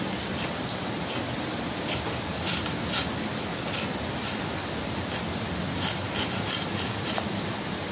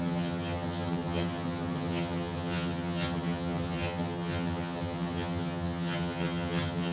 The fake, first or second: second